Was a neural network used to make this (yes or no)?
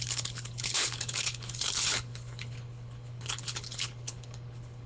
yes